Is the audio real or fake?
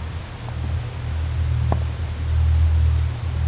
real